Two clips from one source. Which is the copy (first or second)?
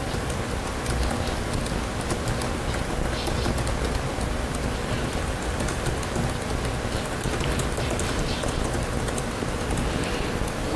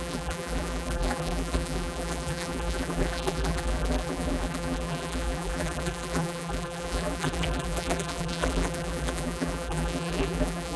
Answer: second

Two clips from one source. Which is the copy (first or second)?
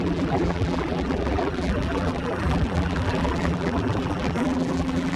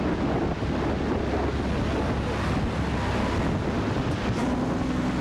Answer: first